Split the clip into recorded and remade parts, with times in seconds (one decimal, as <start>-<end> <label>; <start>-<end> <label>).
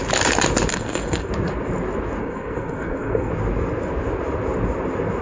0.0-0.7 recorded; 0.7-1.3 remade; 1.3-2.2 recorded; 2.2-3.3 remade; 3.3-5.2 recorded